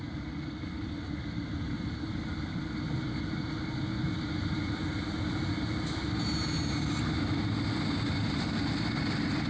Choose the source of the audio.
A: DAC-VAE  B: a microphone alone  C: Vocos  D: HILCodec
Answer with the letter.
B